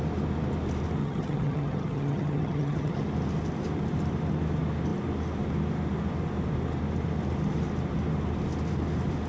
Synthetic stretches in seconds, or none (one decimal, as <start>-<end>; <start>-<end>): 1.0-3.0